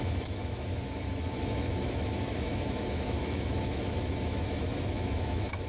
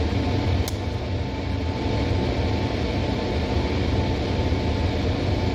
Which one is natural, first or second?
second